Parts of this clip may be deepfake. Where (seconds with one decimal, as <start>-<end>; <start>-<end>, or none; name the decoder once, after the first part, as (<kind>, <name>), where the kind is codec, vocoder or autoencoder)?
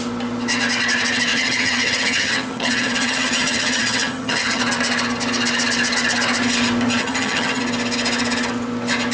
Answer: 1.3-4.6 (vocoder, HiFi-GAN); 7.0-7.6